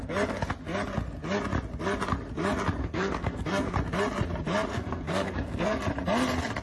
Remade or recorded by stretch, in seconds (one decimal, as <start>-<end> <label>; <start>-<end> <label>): 0.0-2.8 recorded; 2.8-3.7 remade; 3.7-4.7 recorded; 4.7-5.8 remade; 5.8-6.6 recorded